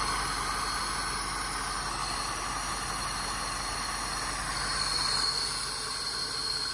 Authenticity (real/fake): real